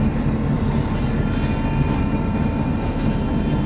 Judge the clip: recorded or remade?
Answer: recorded